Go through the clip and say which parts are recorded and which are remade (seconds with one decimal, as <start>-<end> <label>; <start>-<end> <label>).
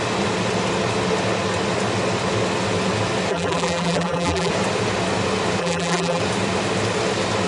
0.0-3.3 recorded; 3.3-4.5 remade; 4.5-5.6 recorded; 5.6-6.2 remade; 6.2-7.5 recorded